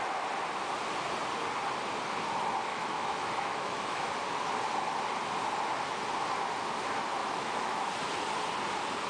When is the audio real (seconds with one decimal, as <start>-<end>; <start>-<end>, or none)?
0.0-2.7; 4.1-7.2; 7.9-9.1